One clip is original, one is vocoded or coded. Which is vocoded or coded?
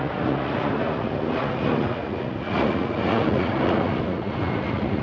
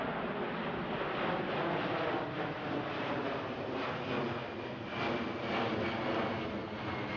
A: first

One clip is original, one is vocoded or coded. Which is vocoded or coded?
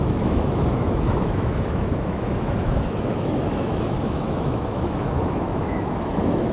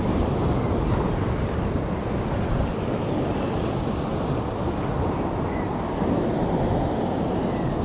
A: first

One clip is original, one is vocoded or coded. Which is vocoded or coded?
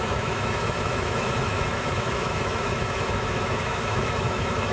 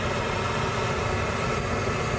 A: first